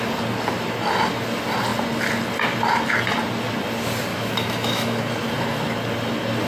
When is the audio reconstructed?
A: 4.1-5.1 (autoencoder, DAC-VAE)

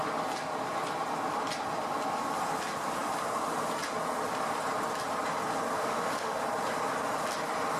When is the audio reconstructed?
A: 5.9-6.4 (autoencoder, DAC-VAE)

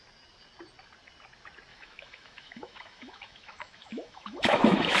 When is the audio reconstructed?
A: 1.7-5.0 (autoencoder, DAC-VAE)